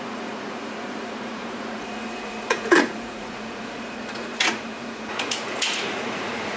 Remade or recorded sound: remade